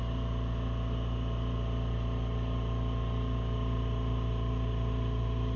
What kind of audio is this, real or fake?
real